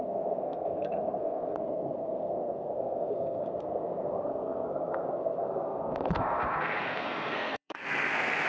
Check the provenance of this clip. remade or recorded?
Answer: remade